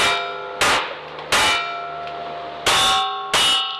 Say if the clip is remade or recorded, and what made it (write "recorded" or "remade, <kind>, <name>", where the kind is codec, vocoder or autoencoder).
recorded